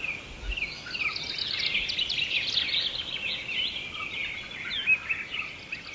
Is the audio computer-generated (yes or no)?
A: no